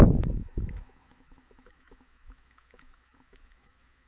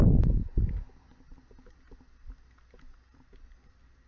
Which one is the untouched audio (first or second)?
second